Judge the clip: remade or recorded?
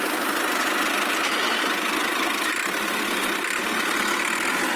recorded